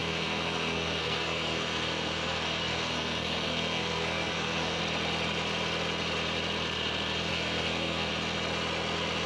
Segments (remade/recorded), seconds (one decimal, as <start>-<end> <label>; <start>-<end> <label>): 0.0-4.8 remade; 4.8-7.3 recorded; 7.3-8.1 remade; 8.1-9.3 recorded